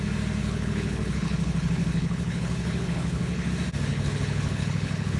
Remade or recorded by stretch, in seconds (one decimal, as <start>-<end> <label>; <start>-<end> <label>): 0.0-0.4 recorded; 0.4-3.5 remade; 3.5-3.9 recorded; 3.9-5.2 remade